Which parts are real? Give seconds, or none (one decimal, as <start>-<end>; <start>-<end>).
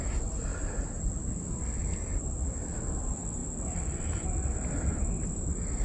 0.0-5.8